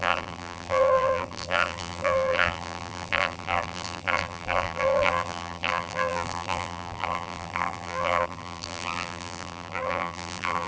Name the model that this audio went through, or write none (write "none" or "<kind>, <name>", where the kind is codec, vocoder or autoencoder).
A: vocoder, BigVGAN v2